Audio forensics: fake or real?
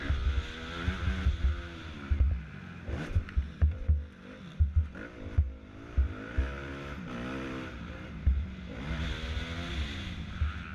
real